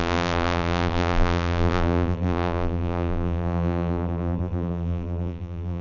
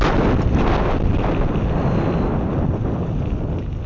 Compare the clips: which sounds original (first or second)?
second